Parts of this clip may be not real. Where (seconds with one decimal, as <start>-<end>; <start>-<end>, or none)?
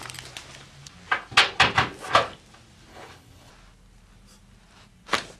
2.9-3.5